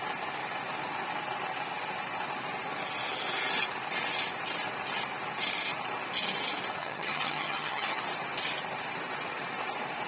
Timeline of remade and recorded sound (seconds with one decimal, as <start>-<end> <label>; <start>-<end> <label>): 0.0-6.8 recorded; 6.8-8.0 remade; 8.0-10.1 recorded